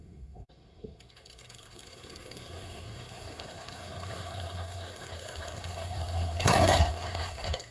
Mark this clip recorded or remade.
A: remade